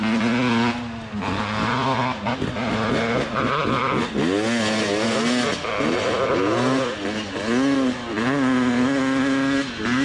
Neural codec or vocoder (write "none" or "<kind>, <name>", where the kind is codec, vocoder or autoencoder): none